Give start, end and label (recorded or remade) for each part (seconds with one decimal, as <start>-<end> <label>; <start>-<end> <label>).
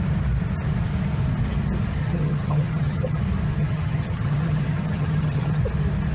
0.0-2.0 recorded; 2.0-3.2 remade; 3.2-3.6 recorded; 3.6-5.6 remade; 5.6-6.1 recorded